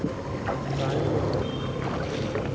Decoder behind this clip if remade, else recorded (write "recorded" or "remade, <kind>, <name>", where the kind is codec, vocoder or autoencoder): recorded